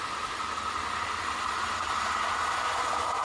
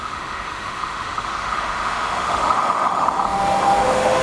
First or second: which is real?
first